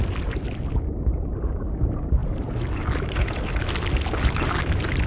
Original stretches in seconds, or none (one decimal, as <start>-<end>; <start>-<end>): 0.0-5.1